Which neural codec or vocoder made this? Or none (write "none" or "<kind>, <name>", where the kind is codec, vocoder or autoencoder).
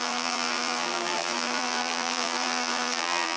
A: vocoder, BigVGAN v2